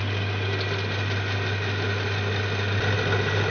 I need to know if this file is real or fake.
real